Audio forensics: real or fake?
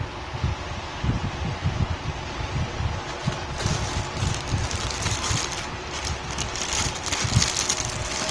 real